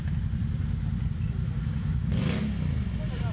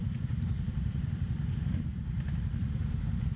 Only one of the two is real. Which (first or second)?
first